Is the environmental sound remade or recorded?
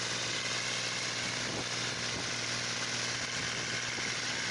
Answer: recorded